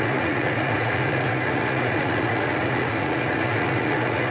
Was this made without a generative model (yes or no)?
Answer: no